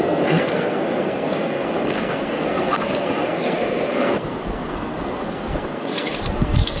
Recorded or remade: remade